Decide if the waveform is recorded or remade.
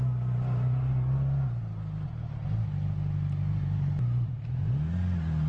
recorded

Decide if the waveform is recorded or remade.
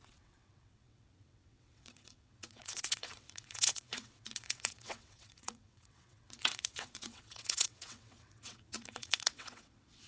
remade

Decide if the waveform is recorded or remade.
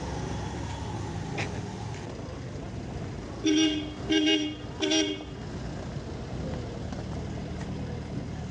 recorded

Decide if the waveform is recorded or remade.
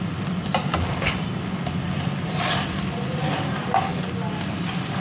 recorded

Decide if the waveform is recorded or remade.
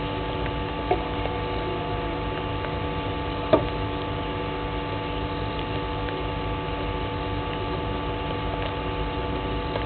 recorded